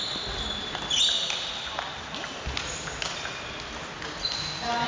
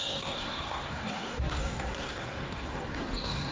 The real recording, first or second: first